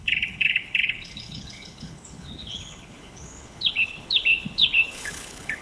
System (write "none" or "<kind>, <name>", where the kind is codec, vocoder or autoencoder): codec, HILCodec